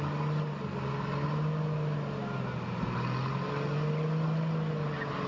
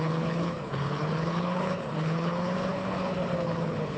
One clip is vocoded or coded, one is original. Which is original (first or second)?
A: first